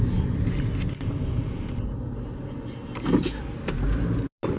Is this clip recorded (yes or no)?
yes